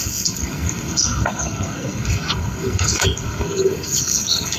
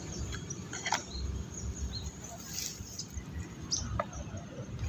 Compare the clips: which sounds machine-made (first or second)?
first